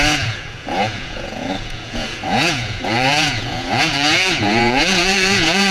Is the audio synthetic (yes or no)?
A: yes